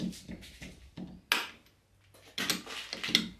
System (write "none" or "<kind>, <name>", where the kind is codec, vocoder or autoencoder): none